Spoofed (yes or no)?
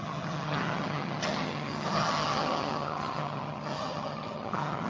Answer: yes